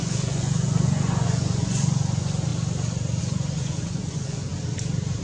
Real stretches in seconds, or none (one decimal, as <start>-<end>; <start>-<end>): 2.5-3.2; 4.5-5.2